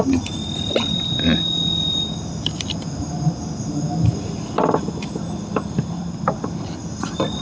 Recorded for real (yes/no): yes